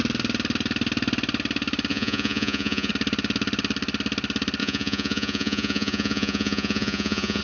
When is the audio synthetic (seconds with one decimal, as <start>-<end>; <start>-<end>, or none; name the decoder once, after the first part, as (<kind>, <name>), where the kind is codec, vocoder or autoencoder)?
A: 1.9-2.9 (vocoder, Vocos); 4.6-7.4